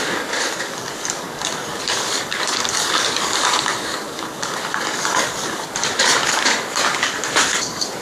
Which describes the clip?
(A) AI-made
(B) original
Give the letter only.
A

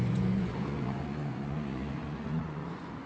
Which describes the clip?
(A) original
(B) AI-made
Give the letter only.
B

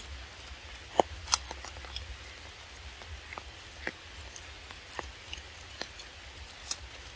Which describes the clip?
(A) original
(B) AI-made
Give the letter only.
A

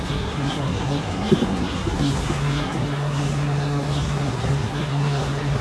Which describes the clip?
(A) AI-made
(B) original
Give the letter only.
A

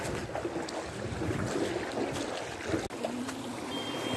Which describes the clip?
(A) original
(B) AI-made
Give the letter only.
A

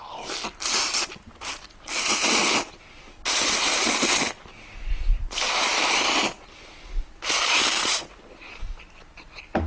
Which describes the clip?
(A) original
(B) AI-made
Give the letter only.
A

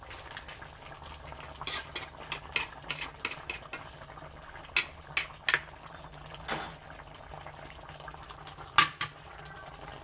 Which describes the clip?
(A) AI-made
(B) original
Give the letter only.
B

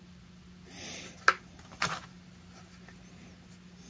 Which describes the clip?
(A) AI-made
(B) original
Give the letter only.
B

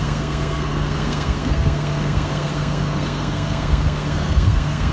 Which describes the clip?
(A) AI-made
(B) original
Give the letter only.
A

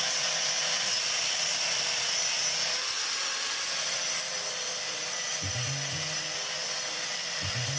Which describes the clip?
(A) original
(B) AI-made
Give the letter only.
A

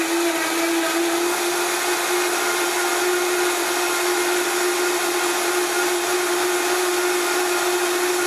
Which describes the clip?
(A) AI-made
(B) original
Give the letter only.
B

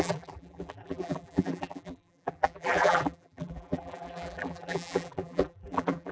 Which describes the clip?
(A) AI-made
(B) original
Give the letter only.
A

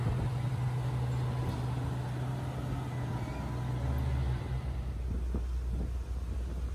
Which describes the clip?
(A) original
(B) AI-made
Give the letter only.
A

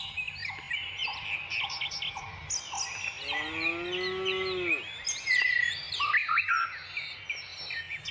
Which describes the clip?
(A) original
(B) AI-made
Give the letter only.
A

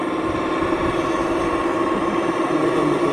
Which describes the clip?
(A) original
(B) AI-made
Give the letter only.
A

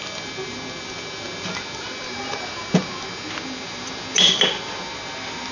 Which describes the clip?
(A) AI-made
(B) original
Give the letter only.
B